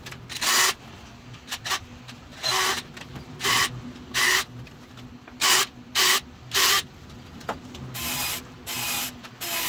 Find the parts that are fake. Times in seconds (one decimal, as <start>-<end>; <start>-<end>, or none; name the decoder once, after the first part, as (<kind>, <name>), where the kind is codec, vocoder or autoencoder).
none